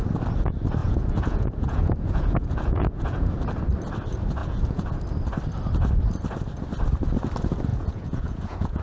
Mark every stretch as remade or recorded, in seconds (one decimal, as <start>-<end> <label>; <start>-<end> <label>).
0.0-0.8 recorded; 0.8-3.3 remade; 3.3-4.4 recorded; 4.4-5.0 remade; 5.0-7.7 recorded; 7.7-8.8 remade